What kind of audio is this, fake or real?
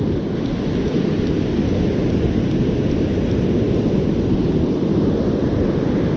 real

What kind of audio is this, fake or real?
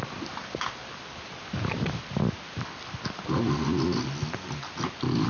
real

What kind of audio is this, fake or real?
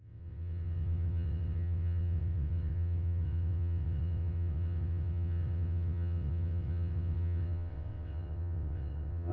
fake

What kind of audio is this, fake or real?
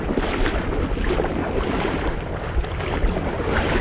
real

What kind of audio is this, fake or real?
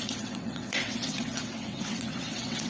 fake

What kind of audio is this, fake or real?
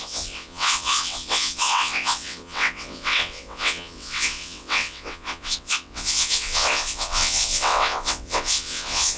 fake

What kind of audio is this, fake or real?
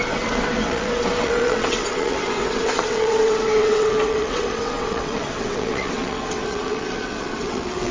fake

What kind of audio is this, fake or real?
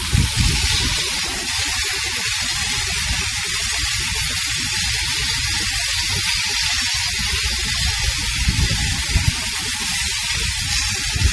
real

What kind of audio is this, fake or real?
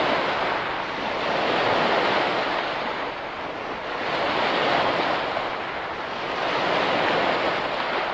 real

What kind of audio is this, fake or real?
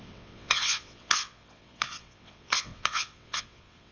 fake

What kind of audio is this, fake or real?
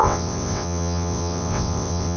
fake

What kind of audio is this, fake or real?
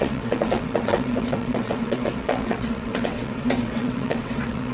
fake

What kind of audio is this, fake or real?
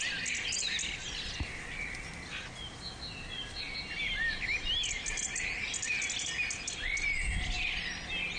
real